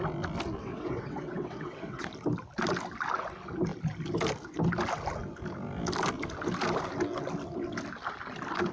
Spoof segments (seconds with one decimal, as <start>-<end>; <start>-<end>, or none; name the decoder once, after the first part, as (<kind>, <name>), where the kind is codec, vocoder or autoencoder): 0.6-2.1 (vocoder, WaveNeXt)